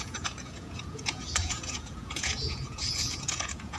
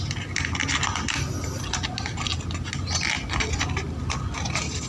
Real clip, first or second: second